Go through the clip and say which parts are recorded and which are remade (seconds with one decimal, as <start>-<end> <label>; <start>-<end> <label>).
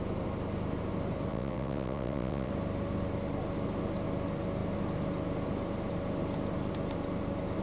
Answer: 0.0-1.3 recorded; 1.3-2.5 remade; 2.5-7.6 recorded